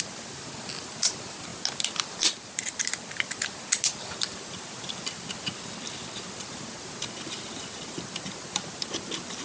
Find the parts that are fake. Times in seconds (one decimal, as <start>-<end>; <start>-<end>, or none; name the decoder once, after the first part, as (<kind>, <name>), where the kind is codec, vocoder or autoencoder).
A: none